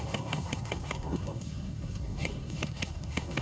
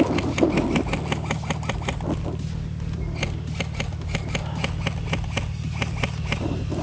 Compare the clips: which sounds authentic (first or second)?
second